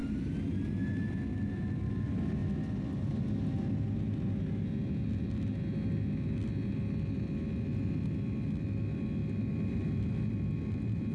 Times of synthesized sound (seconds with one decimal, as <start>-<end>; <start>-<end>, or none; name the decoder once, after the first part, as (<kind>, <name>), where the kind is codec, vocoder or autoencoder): none